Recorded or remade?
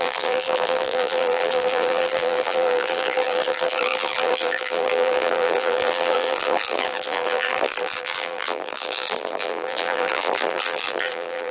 remade